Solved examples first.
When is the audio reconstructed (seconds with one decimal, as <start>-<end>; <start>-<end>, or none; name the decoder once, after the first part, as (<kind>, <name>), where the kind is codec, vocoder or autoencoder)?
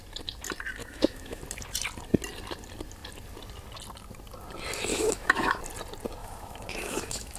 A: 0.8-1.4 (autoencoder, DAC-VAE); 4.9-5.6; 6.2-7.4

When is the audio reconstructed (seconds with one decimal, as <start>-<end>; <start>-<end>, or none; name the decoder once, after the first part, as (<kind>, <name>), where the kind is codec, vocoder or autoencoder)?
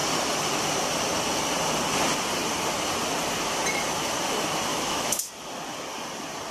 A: 4.7-5.3 (autoencoder, DAC-VAE)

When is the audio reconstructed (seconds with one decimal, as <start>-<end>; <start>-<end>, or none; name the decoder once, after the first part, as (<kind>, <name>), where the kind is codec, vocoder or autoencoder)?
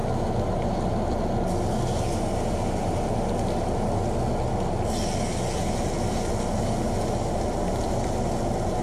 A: none